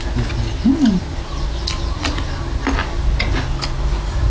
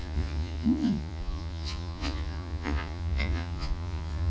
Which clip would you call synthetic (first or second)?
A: second